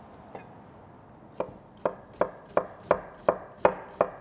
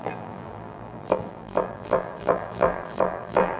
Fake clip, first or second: second